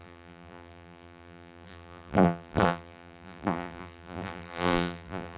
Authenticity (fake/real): fake